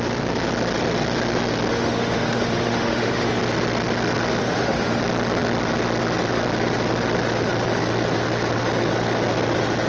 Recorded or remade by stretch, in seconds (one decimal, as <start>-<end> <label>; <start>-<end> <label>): 0.0-1.7 recorded; 1.7-3.4 remade; 3.4-4.4 recorded; 4.4-5.0 remade; 5.0-9.9 recorded